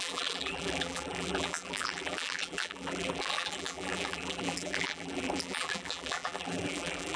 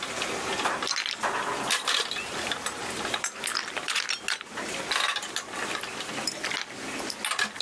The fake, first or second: first